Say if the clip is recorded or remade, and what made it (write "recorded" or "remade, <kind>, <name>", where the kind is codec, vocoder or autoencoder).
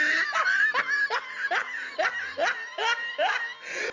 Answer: recorded